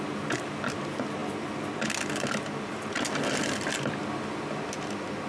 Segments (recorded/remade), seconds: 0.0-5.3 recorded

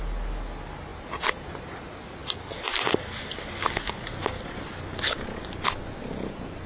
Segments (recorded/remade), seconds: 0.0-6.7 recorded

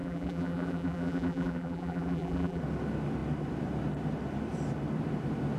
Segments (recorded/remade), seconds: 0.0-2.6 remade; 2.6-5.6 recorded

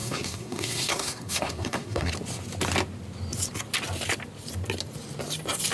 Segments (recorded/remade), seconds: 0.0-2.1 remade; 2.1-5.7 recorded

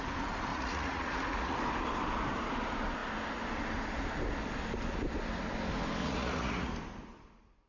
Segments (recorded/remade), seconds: 0.0-0.5 recorded; 0.5-1.6 remade; 1.6-6.0 recorded; 6.0-6.7 remade; 6.7-7.7 recorded

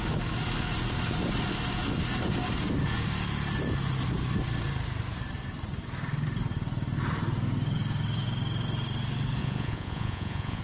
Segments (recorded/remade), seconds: 0.0-9.4 recorded; 9.4-10.6 remade

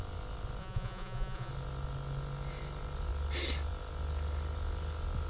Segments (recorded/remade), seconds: 0.0-0.6 recorded; 0.6-1.5 remade; 1.5-5.3 recorded